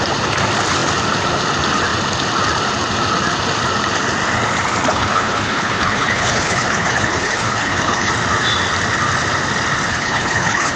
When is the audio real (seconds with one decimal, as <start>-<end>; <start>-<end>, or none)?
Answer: 0.0-4.9; 8.1-9.9